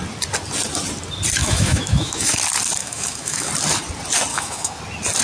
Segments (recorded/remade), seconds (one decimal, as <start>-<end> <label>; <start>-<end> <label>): 0.0-1.4 recorded; 1.4-2.4 remade; 2.4-2.8 recorded; 2.8-3.5 remade; 3.5-4.3 recorded; 4.3-4.8 remade; 4.8-5.2 recorded